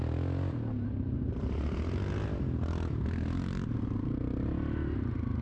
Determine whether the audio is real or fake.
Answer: real